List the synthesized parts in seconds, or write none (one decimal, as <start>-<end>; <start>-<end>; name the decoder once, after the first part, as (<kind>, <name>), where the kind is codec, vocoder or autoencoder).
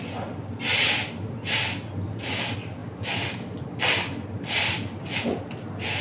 none